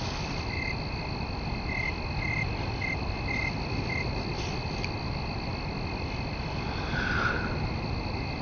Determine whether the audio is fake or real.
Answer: real